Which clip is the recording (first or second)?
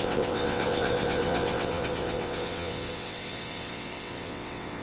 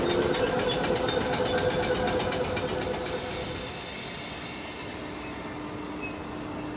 second